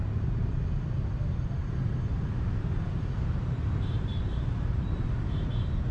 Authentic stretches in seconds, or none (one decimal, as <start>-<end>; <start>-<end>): 0.5-2.6